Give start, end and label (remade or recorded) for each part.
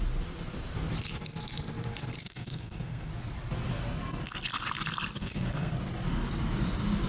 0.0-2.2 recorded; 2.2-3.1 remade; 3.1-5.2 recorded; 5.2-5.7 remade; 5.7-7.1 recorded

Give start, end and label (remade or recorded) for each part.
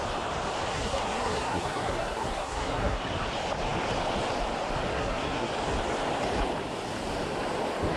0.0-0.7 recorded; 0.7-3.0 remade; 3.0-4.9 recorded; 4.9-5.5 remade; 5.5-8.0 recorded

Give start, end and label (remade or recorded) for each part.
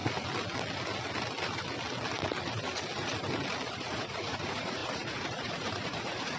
0.0-3.7 recorded; 3.7-6.4 remade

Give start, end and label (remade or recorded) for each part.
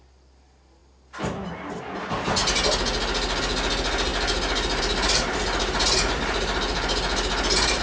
0.0-7.8 recorded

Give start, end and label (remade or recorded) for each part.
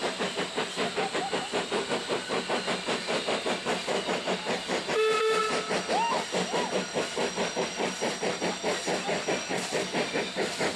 0.0-10.8 recorded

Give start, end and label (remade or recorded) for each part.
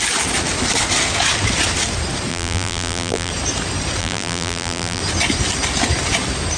0.0-2.3 recorded; 2.3-3.3 remade; 3.3-4.0 recorded; 4.0-5.0 remade; 5.0-6.6 recorded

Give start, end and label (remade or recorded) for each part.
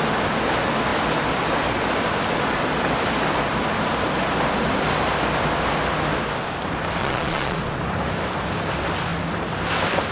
0.0-7.0 recorded; 7.0-7.6 remade; 7.6-10.1 recorded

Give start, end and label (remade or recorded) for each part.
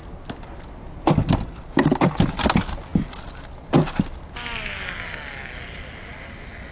0.0-6.7 recorded